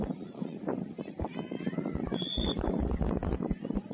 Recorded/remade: remade